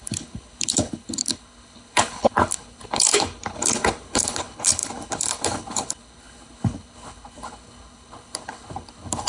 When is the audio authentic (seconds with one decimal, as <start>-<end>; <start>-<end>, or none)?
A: none